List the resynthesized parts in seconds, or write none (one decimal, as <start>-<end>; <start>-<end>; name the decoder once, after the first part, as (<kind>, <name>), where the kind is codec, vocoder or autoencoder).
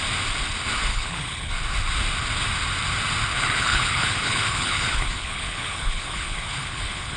0.9-1.5 (codec, HILCodec); 3.3-7.2